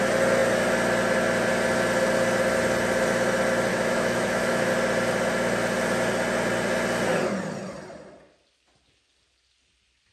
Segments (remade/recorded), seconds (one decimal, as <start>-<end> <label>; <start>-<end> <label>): 0.0-3.7 recorded; 3.7-4.7 remade; 4.7-10.1 recorded